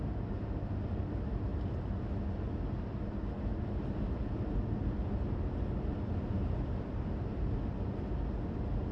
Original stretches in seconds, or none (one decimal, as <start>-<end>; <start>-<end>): 0.0-8.9